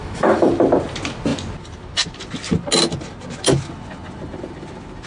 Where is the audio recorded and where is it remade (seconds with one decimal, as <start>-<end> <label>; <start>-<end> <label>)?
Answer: 0.0-0.5 remade; 0.5-5.1 recorded